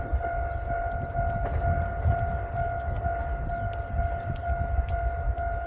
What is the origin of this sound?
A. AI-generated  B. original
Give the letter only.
B